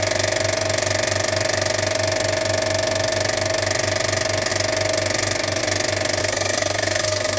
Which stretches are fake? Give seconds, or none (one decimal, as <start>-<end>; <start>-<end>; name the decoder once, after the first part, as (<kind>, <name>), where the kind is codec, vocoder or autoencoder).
6.2-7.4 (codec, SNAC)